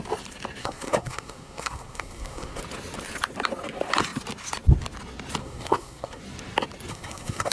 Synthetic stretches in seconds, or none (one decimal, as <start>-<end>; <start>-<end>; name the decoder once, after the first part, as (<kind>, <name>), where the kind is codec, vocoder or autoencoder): 0.6-2.6 (codec, SNAC); 5.4-6.2; 6.9-7.5